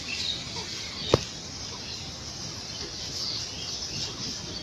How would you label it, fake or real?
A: real